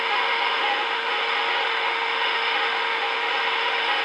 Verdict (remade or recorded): remade